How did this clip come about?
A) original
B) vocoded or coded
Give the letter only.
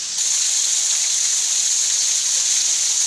B